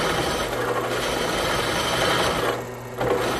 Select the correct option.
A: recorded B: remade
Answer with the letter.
A